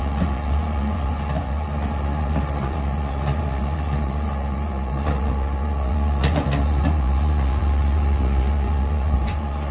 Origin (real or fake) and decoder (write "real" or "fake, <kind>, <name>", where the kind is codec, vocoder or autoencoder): fake, vocoder, Vocos